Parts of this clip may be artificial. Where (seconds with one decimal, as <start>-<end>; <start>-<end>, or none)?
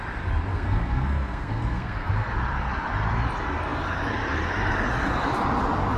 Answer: 0.5-2.1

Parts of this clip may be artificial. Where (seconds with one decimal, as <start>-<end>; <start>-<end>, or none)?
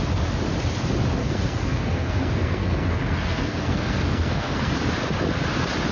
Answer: 1.2-4.7